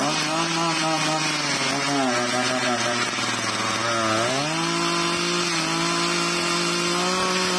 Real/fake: real